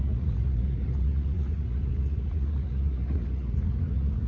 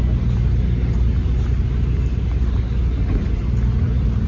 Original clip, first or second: second